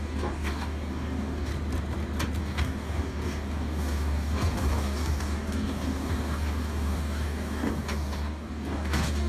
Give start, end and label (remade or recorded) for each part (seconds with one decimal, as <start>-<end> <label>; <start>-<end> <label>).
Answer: 0.0-1.5 remade; 1.5-2.4 recorded; 2.4-9.3 remade